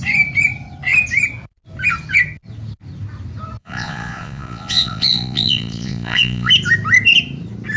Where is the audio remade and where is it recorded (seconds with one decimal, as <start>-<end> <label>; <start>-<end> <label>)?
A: 0.0-3.6 recorded; 3.6-6.5 remade; 6.5-7.8 recorded